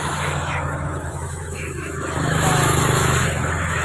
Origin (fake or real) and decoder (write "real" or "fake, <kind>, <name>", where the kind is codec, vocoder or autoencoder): fake, autoencoder, DAC-VAE